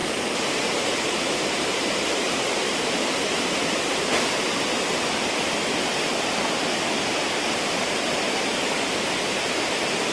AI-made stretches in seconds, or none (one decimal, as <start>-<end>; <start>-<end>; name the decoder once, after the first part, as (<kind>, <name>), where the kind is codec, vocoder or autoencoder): 0.0-4.8 (vocoder, BigVGAN v2)